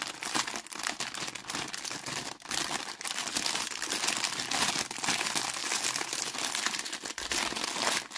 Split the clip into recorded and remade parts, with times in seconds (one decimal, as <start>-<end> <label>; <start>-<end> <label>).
0.0-8.2 recorded